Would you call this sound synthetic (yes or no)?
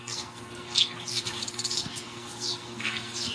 yes